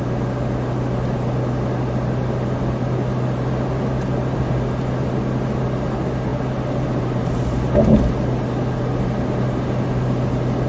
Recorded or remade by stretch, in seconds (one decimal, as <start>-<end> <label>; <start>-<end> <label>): 0.0-10.7 recorded